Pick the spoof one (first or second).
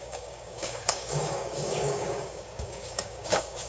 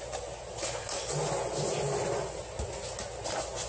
first